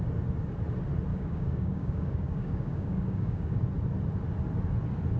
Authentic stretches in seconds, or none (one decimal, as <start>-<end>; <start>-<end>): 0.0-1.1; 3.6-5.2